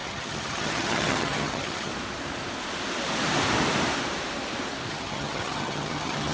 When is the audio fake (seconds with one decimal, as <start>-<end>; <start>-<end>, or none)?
0.0-1.9; 4.9-6.3